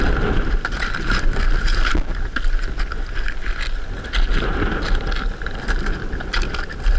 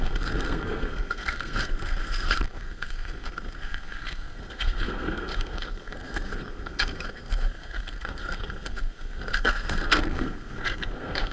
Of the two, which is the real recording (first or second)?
first